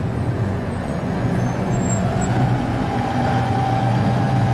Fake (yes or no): yes